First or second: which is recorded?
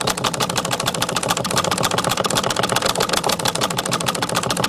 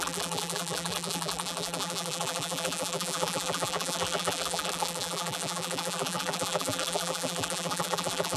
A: first